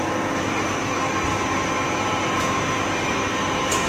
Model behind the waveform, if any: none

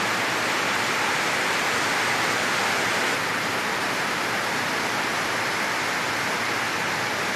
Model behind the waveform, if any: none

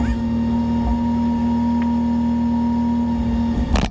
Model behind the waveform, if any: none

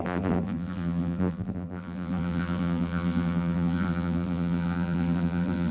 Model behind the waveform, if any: vocoder, BigVGAN v2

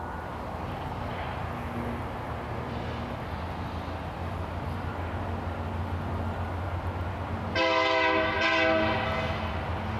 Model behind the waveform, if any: none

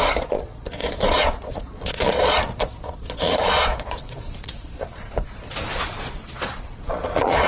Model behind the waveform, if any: vocoder, Vocos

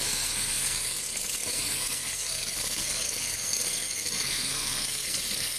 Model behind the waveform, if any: codec, SNAC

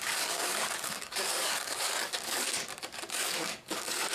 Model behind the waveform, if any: codec, DAC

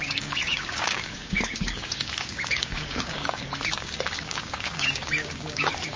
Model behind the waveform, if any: codec, DAC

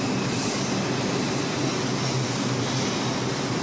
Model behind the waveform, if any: none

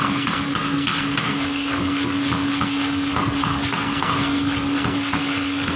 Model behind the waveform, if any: codec, SNAC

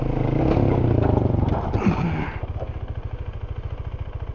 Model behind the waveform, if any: none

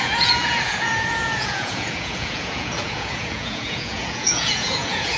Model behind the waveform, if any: vocoder, Vocos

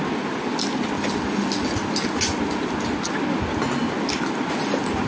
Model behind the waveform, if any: none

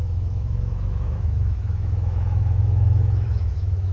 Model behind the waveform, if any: autoencoder, DAC-VAE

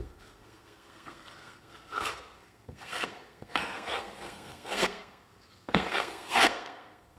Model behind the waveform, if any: codec, SNAC